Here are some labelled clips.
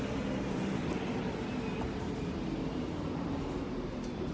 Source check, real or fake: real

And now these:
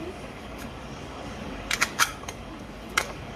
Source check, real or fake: fake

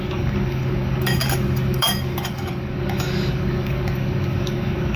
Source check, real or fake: fake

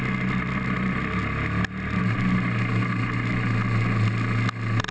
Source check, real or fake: real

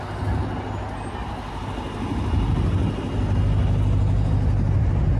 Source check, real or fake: real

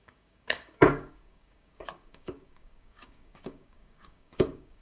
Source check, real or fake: fake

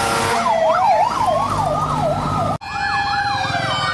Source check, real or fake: real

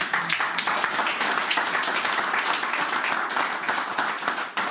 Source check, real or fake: real